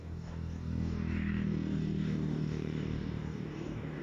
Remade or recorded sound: remade